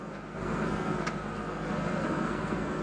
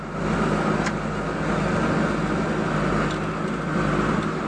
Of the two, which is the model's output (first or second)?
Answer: first